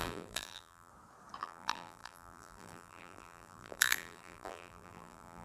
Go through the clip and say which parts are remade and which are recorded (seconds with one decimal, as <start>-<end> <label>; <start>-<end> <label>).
0.0-0.9 remade; 0.9-1.4 recorded; 1.4-5.4 remade